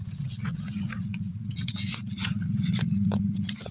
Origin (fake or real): fake